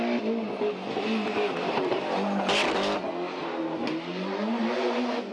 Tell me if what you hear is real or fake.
real